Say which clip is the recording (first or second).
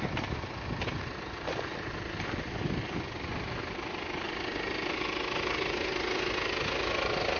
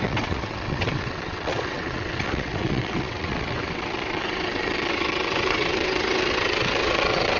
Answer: first